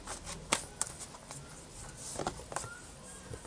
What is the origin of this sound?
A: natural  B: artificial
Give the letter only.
A